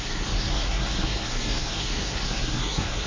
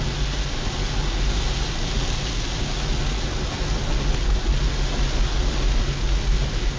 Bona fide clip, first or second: second